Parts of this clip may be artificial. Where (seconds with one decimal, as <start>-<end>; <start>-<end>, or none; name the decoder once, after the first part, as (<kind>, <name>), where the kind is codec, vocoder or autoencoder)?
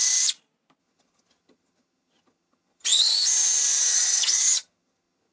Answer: 0.8-3.1 (vocoder, HiFi-GAN); 3.9-5.3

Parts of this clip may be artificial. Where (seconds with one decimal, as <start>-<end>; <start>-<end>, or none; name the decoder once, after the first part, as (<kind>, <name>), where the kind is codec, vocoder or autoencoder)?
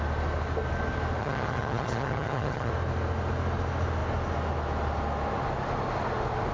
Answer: 1.2-2.7 (vocoder, HiFi-GAN)